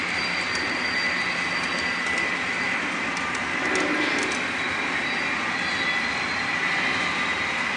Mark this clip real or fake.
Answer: real